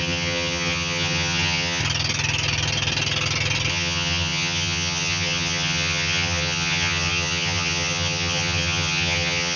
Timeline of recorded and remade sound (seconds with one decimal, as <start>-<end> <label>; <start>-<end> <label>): 0.0-1.8 remade; 1.8-3.7 recorded; 3.7-9.6 remade